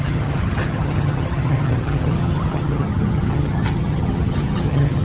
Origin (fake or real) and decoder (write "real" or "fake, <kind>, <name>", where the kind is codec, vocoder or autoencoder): fake, vocoder, HiFi-GAN